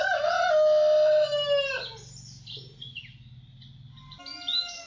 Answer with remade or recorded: recorded